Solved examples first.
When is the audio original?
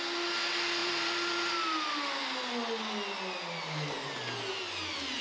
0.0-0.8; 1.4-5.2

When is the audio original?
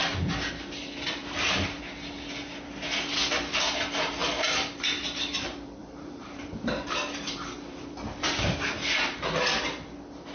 0.0-1.2; 1.8-4.2; 8.2-10.3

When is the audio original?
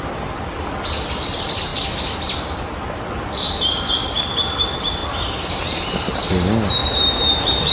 0.0-6.8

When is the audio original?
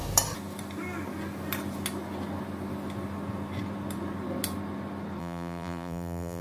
0.0-5.2